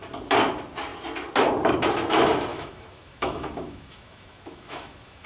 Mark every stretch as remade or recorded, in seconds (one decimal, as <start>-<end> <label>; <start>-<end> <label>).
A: 0.0-2.5 recorded; 2.5-5.3 remade